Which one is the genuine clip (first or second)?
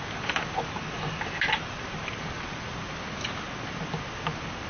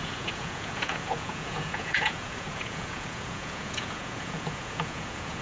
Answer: first